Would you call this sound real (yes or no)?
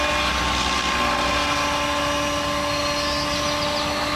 yes